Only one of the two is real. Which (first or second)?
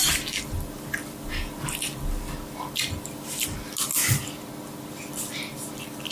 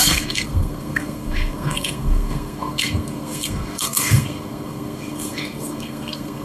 first